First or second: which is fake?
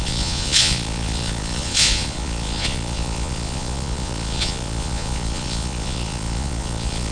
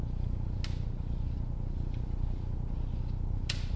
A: first